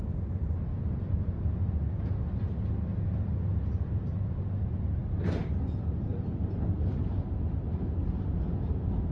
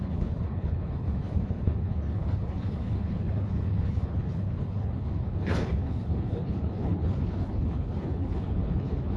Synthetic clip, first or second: second